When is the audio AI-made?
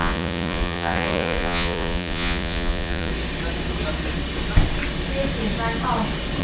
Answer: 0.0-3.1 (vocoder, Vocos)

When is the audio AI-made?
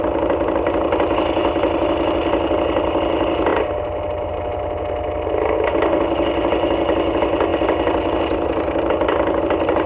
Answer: none